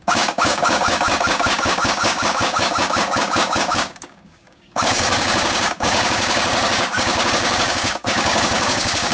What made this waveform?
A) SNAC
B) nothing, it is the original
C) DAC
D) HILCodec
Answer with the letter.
C